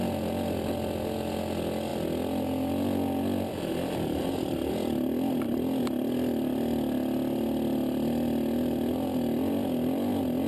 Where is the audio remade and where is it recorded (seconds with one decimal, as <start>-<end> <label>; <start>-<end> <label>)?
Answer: 0.0-10.5 recorded